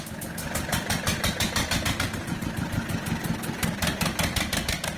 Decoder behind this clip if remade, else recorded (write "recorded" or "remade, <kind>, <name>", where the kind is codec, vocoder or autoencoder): recorded